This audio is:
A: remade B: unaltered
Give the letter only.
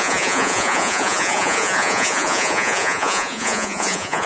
A